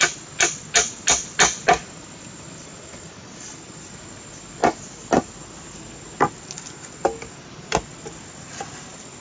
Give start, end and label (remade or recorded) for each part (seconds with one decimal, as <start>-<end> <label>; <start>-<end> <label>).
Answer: 0.0-9.2 recorded